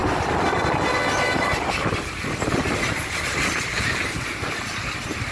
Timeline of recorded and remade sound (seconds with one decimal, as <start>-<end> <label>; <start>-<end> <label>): 0.0-3.7 recorded; 3.7-4.5 remade; 4.5-5.3 recorded